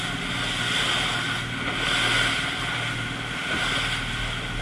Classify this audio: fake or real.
real